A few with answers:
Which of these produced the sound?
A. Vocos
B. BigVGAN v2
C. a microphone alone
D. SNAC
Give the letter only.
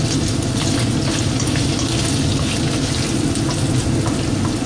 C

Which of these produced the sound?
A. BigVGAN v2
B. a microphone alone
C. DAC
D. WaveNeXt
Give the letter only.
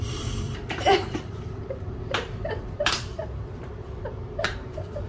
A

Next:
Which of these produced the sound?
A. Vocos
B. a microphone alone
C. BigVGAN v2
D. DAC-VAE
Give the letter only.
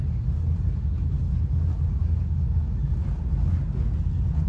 B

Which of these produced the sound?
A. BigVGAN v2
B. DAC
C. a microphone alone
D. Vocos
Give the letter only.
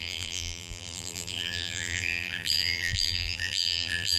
A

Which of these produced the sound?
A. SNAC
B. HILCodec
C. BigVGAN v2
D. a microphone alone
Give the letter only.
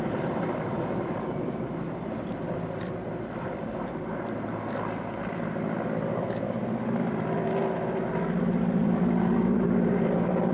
C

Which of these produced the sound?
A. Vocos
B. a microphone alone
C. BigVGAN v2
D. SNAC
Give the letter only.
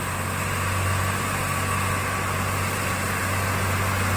B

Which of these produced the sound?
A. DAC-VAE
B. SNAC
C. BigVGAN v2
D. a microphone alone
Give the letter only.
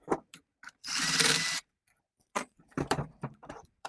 C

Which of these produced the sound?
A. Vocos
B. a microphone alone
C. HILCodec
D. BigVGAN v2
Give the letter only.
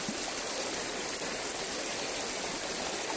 B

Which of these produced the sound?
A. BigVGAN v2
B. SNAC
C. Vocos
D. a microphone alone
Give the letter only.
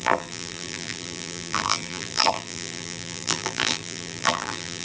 A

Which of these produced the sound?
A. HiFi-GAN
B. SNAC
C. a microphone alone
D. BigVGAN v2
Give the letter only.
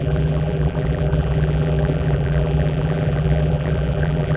D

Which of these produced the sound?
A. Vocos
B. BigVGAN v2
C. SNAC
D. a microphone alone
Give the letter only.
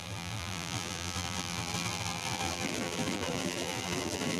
B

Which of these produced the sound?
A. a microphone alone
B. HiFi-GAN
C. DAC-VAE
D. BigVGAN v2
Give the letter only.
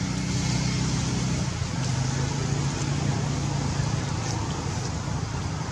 A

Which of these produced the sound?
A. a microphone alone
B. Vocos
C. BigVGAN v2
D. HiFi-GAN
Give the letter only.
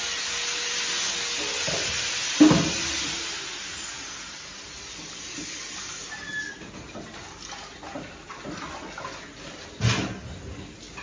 A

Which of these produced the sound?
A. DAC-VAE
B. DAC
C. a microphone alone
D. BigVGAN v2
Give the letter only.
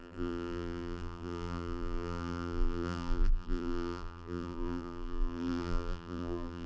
D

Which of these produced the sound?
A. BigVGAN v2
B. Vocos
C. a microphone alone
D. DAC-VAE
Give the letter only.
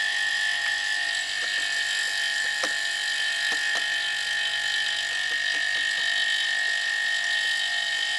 C